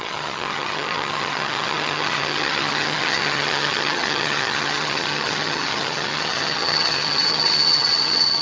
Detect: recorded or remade remade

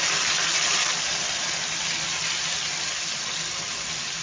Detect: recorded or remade recorded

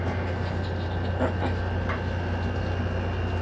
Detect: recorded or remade recorded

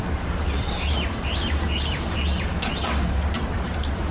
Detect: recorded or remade remade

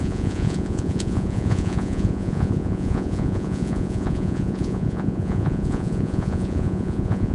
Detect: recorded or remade remade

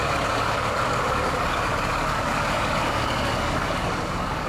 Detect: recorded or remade remade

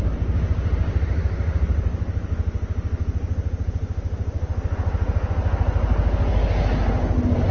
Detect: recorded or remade recorded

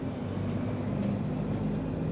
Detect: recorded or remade recorded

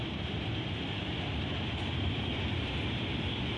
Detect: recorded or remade recorded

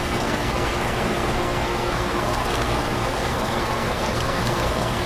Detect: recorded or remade remade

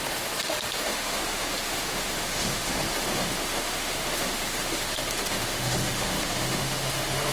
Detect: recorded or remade remade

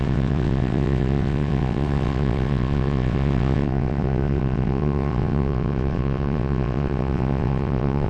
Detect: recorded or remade remade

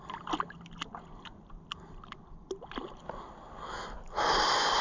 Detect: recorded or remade recorded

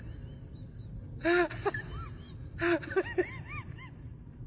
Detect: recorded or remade recorded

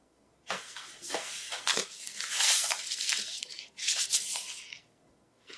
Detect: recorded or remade remade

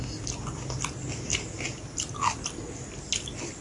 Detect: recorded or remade recorded